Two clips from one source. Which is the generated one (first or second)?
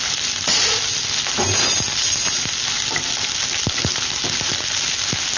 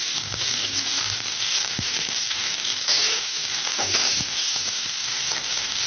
second